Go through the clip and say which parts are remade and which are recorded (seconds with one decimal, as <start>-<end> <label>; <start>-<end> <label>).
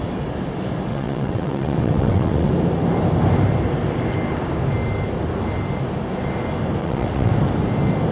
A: 0.0-0.9 recorded; 0.9-2.5 remade; 2.5-6.8 recorded; 6.8-7.3 remade; 7.3-8.1 recorded